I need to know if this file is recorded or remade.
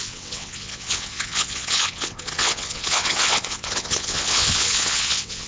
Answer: remade